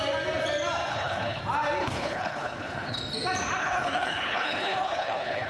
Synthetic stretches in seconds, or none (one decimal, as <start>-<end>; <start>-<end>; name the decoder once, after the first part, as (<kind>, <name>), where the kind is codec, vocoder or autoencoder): 0.9-1.4 (codec, HILCodec); 1.8-3.0; 3.6-5.5